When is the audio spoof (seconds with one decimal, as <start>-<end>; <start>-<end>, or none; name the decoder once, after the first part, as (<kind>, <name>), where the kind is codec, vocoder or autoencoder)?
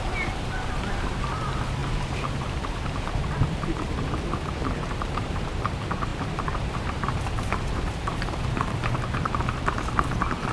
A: 0.0-10.5 (vocoder, BigVGAN v2)